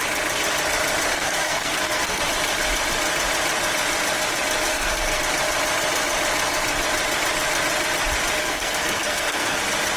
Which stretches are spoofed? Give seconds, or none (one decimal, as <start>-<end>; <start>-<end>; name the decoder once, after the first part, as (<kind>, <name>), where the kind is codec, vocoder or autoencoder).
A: 1.1-2.2 (codec, SNAC); 4.7-5.2; 8.4-9.6